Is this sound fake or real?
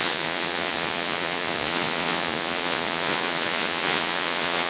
fake